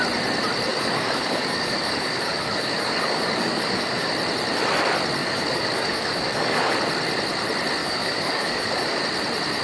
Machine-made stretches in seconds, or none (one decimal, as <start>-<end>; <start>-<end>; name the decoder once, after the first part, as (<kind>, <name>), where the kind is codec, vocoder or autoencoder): 0.7-4.1 (codec, DAC); 5.2-6.7; 7.8-9.0